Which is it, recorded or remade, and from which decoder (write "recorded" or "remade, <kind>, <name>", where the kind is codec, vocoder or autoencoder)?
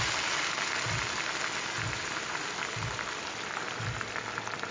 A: recorded